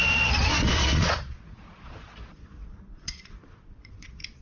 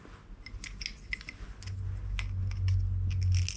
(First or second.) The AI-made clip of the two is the first